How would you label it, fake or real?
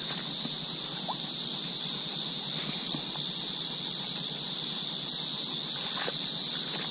real